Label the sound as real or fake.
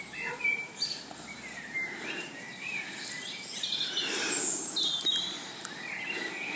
fake